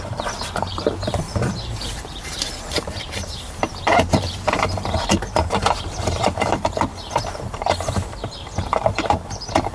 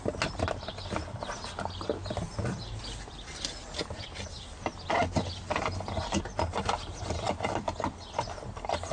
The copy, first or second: first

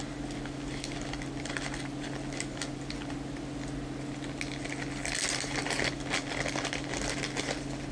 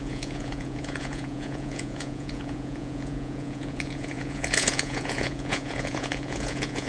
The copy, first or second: second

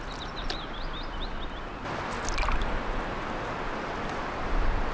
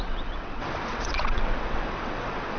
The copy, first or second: second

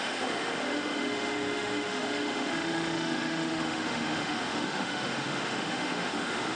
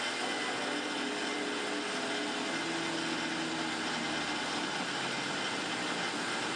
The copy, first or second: first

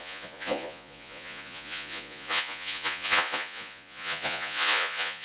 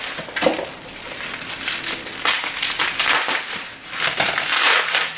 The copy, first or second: first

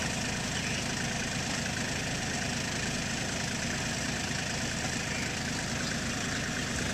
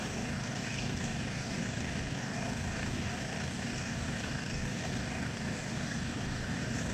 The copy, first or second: second